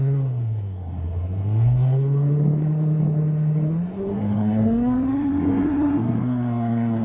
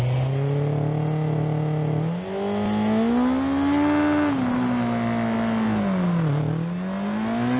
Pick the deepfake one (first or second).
first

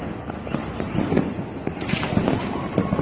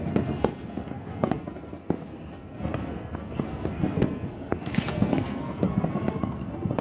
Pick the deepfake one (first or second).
second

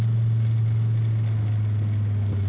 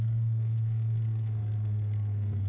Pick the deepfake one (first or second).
second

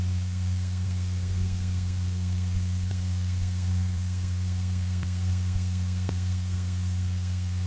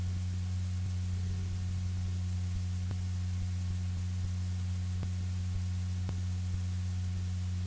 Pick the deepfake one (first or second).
first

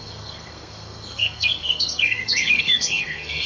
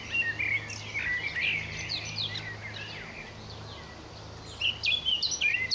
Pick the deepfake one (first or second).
first